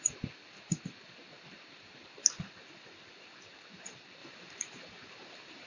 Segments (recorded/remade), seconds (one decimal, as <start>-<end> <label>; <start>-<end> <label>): 0.0-4.2 recorded; 4.2-5.7 remade